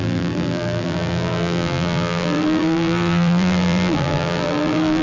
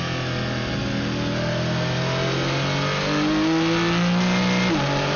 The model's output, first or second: first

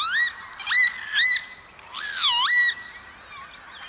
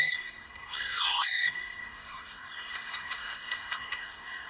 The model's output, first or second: second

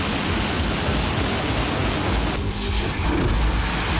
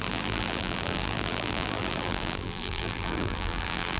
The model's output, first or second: second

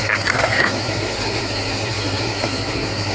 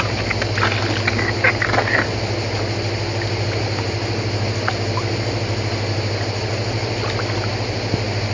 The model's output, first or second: first